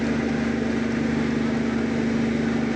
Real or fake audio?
real